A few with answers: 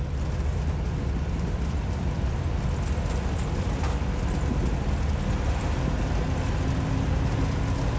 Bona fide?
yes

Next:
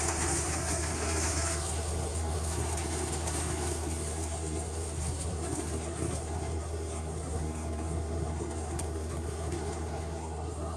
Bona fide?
no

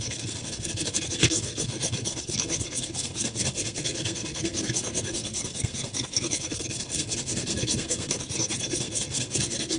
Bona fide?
no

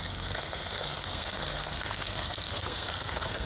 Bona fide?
no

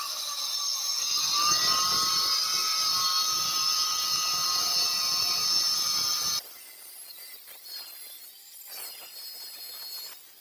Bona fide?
yes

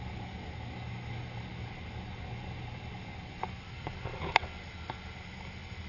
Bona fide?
yes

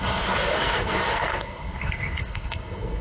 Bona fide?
no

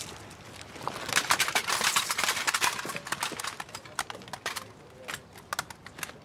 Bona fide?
yes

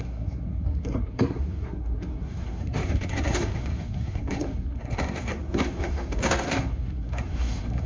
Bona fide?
no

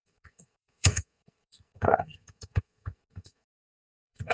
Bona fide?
no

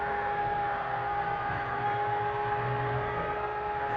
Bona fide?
no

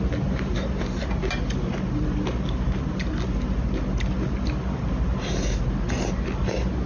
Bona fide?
yes